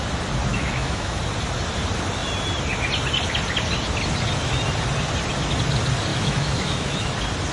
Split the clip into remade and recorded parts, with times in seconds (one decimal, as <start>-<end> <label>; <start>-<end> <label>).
0.0-0.5 recorded; 0.5-1.2 remade; 1.2-6.1 recorded; 6.1-7.1 remade; 7.1-7.5 recorded